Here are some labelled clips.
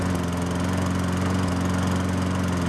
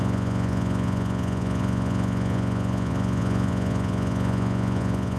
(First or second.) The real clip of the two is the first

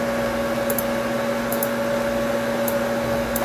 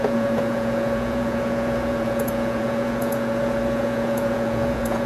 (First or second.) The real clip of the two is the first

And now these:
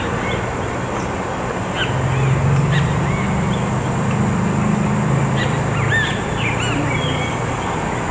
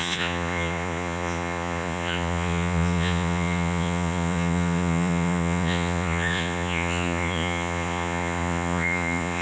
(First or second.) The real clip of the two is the first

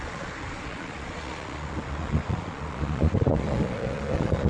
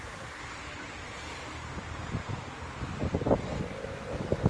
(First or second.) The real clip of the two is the second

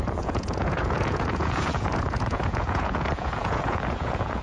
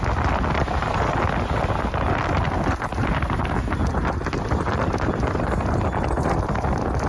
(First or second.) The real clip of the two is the second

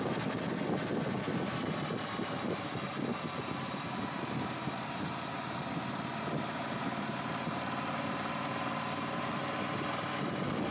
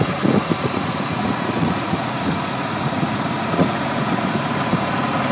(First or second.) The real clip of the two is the first